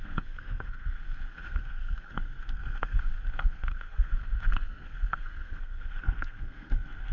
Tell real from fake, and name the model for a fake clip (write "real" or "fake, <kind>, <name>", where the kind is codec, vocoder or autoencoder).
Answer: fake, codec, SNAC